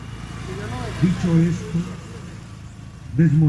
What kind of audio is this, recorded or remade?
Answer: recorded